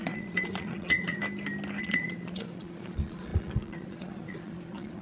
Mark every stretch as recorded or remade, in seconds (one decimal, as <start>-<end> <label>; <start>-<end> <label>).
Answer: 0.0-1.2 remade; 1.2-1.8 recorded; 1.8-5.0 remade